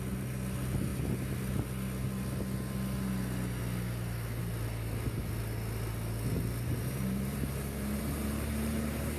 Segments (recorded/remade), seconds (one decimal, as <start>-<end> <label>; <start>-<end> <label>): 0.0-6.8 recorded; 6.8-9.2 remade